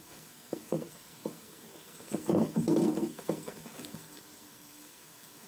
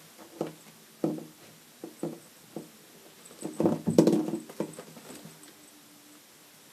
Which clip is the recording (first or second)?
second